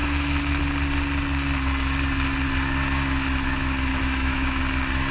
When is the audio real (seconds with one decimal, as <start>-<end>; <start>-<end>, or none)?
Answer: 0.6-3.9; 4.6-5.1